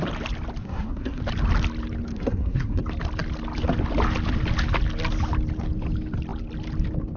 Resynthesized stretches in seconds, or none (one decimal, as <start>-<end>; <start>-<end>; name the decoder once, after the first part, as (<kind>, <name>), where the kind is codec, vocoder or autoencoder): 0.6-1.2 (codec, SNAC); 2.1-2.8